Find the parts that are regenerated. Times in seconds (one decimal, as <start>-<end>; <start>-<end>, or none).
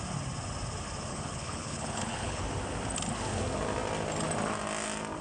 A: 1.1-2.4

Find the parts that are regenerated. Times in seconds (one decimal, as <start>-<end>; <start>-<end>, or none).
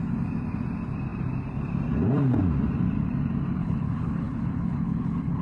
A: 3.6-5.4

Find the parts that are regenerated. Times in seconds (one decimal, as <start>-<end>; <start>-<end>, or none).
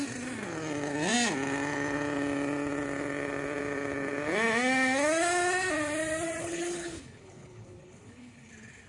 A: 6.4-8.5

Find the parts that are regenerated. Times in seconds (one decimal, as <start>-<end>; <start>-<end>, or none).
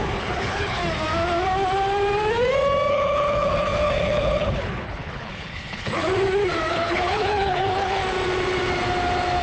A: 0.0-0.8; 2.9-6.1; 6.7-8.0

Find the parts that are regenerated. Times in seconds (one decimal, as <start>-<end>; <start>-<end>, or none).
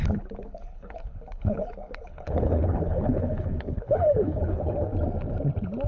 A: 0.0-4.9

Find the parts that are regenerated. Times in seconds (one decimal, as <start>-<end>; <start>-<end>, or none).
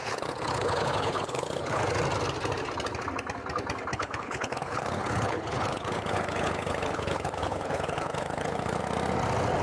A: 0.0-1.8; 3.9-8.8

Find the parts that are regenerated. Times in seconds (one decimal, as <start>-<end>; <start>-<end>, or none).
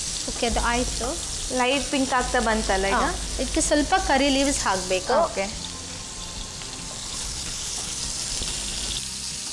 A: 7.0-8.0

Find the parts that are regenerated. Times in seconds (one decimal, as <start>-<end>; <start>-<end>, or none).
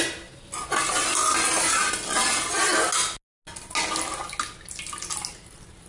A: none